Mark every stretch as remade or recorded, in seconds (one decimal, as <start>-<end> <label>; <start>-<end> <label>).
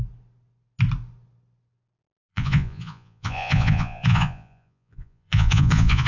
0.0-2.3 recorded; 2.3-6.1 remade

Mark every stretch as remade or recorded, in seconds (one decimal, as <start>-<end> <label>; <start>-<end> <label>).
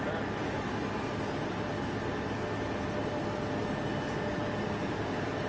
0.0-5.5 recorded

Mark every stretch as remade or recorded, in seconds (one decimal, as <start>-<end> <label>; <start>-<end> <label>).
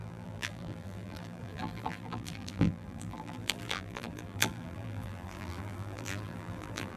0.0-7.0 remade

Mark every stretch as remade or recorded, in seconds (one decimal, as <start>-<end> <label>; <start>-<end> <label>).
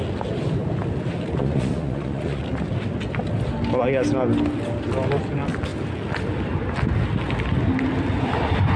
0.0-1.4 recorded; 1.4-2.4 remade; 2.4-8.8 recorded